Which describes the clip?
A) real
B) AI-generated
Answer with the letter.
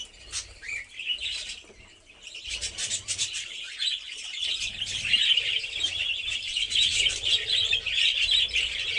B